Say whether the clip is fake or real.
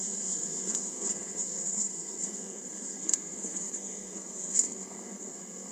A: fake